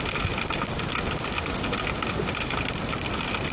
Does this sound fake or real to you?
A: real